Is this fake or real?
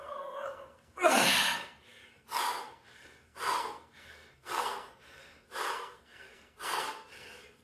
fake